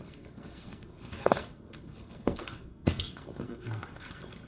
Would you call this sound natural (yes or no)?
no